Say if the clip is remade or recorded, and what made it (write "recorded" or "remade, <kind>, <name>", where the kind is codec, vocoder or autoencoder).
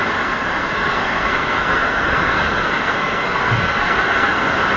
remade, codec, SNAC